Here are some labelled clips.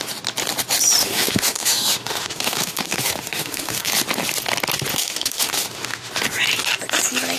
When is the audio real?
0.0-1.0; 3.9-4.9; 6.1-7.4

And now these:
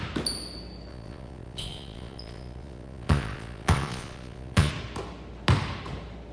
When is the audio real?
0.0-0.9; 4.7-6.3

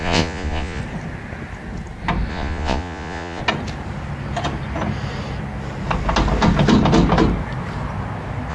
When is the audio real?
0.8-2.3; 3.4-8.5

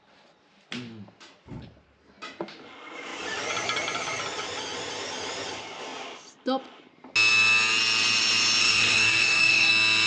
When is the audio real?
0.0-8.6; 9.7-10.1